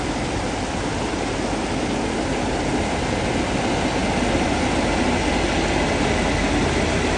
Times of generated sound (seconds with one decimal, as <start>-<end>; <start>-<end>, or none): none